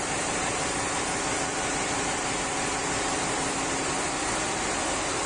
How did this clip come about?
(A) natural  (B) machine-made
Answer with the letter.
A